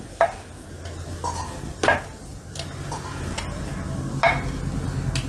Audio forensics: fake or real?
real